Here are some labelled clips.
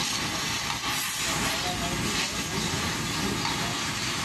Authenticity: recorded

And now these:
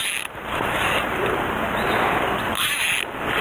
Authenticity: remade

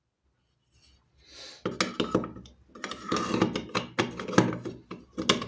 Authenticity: recorded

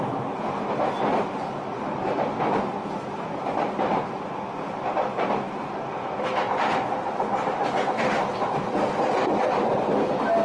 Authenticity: recorded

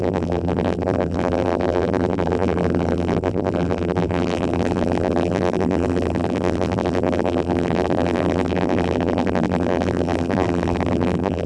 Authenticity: remade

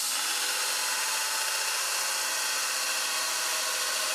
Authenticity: recorded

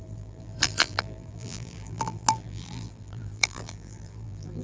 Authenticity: remade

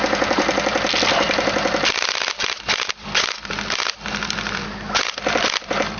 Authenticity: remade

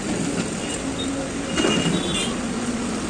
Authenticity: recorded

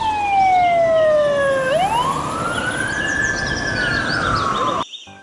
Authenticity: recorded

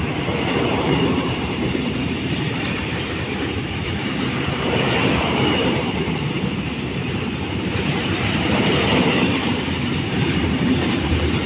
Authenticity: remade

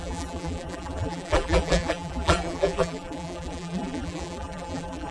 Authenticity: remade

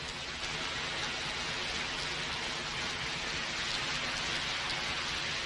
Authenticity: recorded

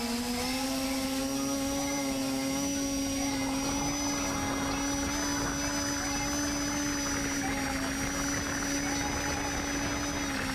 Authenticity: recorded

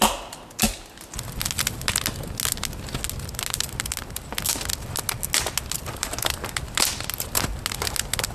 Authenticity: recorded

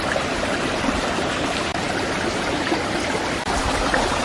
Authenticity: remade